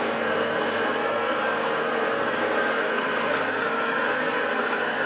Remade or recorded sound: remade